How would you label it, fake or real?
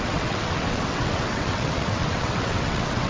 fake